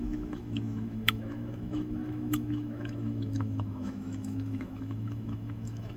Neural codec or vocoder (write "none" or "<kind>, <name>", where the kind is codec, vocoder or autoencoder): autoencoder, DAC-VAE